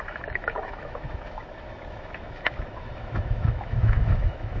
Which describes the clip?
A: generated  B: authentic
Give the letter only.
A